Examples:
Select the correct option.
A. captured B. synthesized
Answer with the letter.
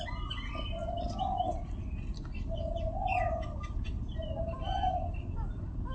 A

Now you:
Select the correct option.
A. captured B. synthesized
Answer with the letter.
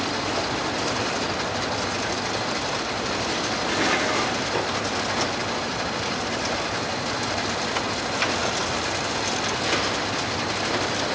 A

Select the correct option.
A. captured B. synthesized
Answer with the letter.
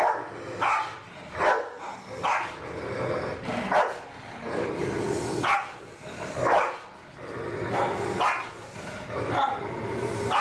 A